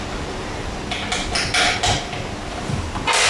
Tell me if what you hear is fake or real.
real